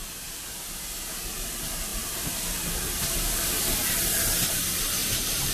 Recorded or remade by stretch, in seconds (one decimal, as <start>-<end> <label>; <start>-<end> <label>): 0.0-1.9 recorded; 1.9-2.7 remade; 2.7-5.0 recorded; 5.0-5.5 remade

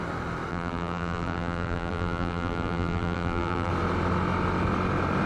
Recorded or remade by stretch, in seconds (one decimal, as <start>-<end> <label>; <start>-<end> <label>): 0.0-0.5 recorded; 0.5-3.7 remade; 3.7-5.3 recorded